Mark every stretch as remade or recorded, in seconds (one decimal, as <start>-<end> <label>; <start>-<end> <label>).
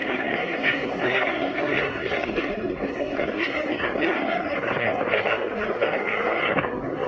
0.0-7.1 remade